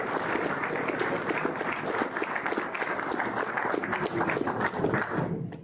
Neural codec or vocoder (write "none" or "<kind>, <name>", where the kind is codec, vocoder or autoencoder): none